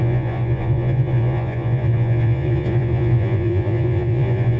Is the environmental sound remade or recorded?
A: remade